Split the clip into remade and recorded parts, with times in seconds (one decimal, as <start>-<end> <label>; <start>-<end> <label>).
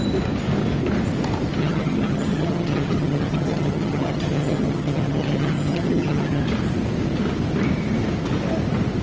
0.0-1.6 recorded; 1.6-6.4 remade; 6.4-9.0 recorded